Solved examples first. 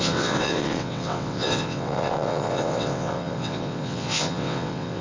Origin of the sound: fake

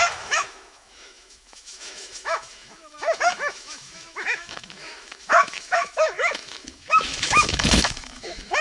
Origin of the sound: fake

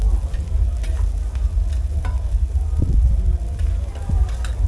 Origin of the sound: real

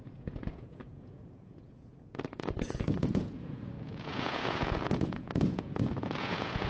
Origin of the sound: fake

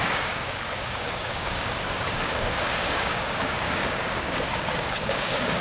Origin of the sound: fake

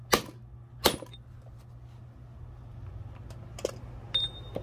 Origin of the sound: real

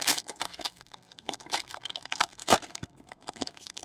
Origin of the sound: fake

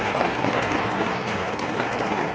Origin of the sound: fake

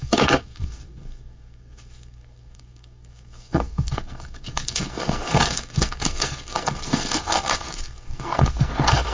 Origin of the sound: fake